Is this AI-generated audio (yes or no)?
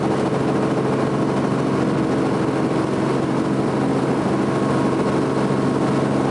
no